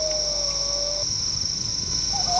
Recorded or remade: recorded